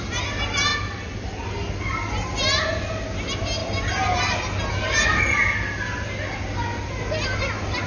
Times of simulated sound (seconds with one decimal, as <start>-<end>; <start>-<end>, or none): none